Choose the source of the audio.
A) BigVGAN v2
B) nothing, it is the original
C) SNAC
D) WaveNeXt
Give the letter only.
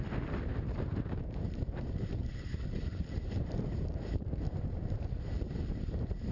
A